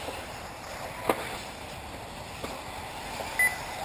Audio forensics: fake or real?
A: real